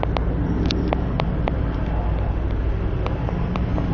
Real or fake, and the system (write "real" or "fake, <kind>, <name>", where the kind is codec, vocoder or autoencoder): fake, vocoder, BigVGAN v2